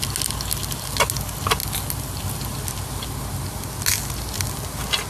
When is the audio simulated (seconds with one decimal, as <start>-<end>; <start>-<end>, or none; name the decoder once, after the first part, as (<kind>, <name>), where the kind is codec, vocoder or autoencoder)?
none